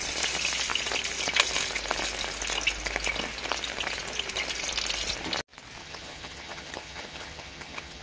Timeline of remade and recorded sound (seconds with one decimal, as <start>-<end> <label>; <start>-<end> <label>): 0.0-5.8 recorded; 5.8-8.0 remade